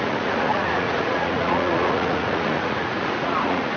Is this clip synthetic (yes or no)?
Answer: yes